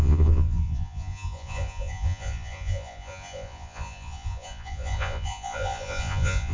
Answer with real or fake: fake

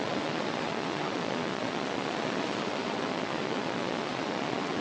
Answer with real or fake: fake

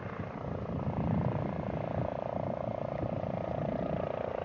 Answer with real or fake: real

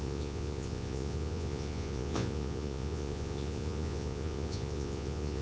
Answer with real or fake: fake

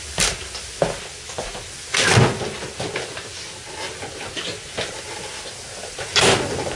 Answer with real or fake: real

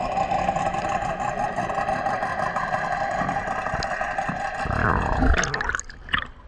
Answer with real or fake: real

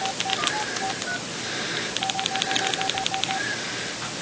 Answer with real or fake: real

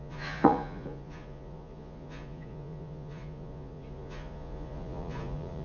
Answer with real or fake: fake